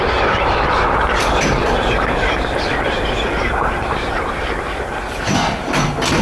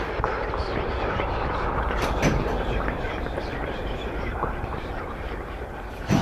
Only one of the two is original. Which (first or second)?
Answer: first